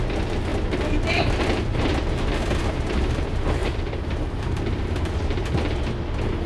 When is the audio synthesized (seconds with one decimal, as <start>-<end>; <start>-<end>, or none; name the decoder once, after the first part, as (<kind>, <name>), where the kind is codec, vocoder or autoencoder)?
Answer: 0.0-0.5 (vocoder, BigVGAN v2); 1.4-1.9; 2.9-6.5